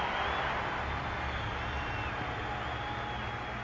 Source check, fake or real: real